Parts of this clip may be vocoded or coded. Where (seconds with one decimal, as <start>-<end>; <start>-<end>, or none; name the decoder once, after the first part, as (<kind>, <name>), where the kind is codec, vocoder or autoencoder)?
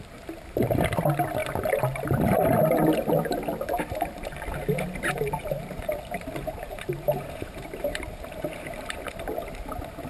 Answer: 5.4-9.0 (vocoder, BigVGAN v2)